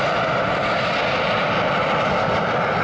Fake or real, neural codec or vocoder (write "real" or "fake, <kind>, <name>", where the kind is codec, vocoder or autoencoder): real